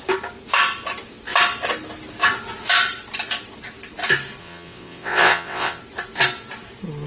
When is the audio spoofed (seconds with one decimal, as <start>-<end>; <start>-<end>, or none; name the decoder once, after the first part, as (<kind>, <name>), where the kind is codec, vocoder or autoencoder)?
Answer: 4.4-5.8 (vocoder, WaveNeXt)